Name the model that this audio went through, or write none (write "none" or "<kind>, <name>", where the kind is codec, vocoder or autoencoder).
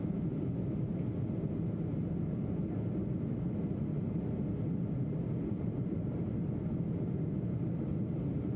none